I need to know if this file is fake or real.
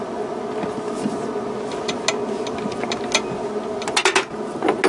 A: real